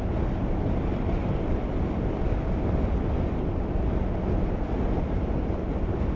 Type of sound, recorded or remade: recorded